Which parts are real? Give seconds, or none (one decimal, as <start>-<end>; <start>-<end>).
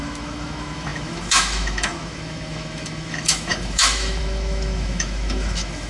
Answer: none